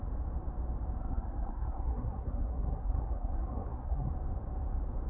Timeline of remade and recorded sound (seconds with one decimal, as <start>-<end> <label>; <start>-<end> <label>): 0.0-1.0 recorded; 1.0-4.1 remade; 4.1-5.1 recorded